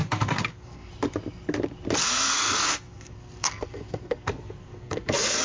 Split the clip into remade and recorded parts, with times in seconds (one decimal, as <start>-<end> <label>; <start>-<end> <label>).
0.0-0.9 remade; 0.9-2.0 recorded; 2.0-5.4 remade